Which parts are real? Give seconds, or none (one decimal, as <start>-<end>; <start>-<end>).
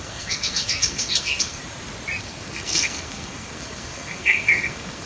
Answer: 1.6-2.2